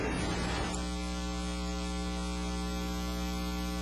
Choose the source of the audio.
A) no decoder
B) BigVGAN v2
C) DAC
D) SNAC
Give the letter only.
A